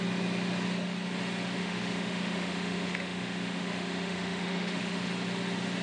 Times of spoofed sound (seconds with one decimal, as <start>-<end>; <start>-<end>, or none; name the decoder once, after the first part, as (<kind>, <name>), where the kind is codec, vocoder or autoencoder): 1.6-5.1 (autoencoder, DAC-VAE)